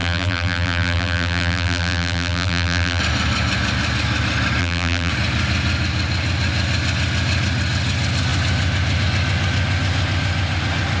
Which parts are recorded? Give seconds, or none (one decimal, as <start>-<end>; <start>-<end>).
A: 3.0-4.6; 5.1-11.0